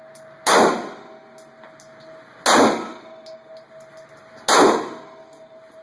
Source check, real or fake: real